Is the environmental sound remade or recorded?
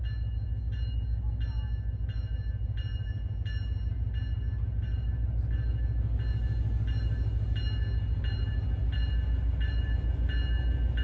recorded